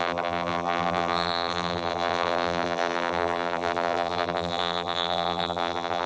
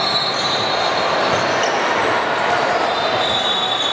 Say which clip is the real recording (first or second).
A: second